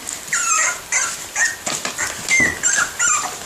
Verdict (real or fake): real